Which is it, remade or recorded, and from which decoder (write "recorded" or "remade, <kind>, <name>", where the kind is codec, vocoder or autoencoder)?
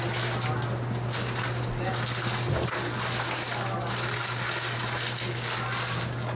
recorded